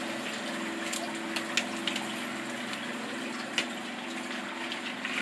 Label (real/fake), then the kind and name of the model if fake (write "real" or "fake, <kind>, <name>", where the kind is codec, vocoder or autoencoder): real